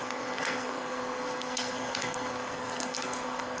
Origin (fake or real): fake